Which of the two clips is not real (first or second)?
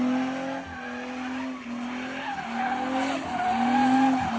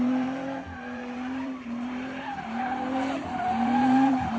second